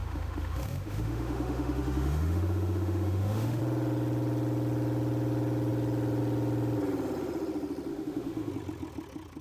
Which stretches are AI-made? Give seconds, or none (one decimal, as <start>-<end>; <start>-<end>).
0.0-3.6; 7.9-8.5